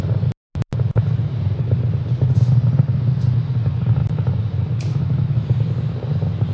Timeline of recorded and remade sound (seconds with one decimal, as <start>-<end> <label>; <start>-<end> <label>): 0.0-4.9 recorded; 4.9-5.4 remade; 5.4-6.5 recorded